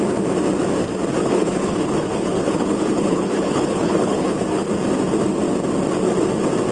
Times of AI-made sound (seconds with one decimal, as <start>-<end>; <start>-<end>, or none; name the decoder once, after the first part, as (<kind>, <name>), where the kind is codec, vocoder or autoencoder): 1.2-4.7 (codec, HILCodec)